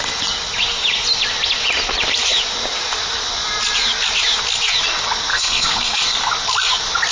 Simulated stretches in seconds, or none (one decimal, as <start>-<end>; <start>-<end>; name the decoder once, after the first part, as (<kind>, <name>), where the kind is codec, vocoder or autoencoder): 5.3-6.3 (codec, SNAC)

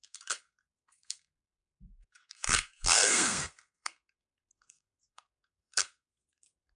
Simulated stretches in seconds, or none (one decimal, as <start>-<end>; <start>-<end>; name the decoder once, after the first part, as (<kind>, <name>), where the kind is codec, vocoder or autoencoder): 0.0-6.8 (codec, SNAC)

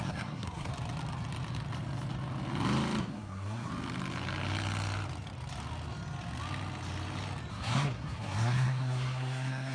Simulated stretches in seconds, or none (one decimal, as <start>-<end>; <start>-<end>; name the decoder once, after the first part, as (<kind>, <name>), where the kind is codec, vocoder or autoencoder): 0.0-0.7 (codec, SNAC); 3.0-3.7; 7.5-9.7

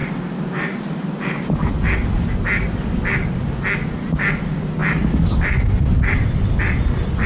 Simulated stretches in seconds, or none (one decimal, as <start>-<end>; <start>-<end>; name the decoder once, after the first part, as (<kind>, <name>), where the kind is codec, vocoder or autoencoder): none